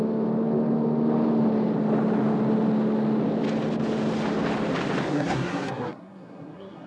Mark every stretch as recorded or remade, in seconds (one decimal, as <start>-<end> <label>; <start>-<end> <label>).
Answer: 0.0-5.1 recorded; 5.1-6.9 remade

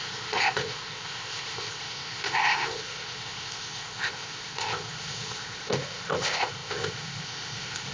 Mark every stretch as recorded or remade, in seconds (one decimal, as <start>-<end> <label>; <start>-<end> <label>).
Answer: 0.0-7.9 remade

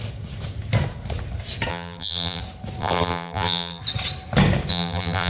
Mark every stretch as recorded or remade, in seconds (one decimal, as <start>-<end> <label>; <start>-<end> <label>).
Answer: 0.0-1.7 recorded; 1.7-2.4 remade; 2.4-2.8 recorded; 2.8-3.8 remade; 3.8-4.7 recorded; 4.7-5.3 remade